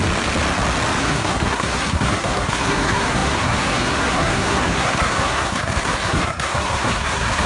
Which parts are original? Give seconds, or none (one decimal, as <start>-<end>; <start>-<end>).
0.0-1.0